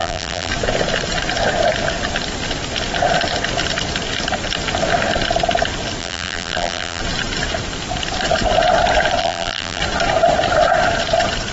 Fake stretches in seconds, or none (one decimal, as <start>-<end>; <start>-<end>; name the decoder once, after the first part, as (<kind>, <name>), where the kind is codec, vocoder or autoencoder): 0.0-0.5 (vocoder, BigVGAN v2); 6.0-7.0; 9.2-9.8